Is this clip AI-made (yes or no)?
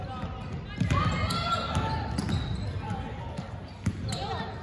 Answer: no